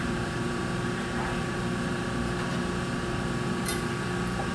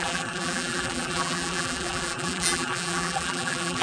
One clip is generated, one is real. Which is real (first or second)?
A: first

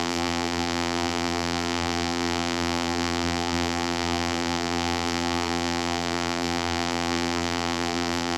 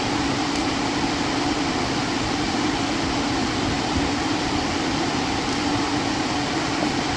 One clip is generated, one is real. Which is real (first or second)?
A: second